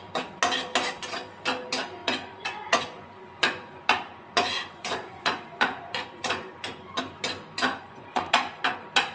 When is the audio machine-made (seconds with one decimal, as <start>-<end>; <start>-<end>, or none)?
2.0-7.0; 7.7-8.5